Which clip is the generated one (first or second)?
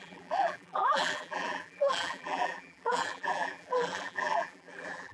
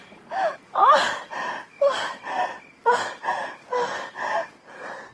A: first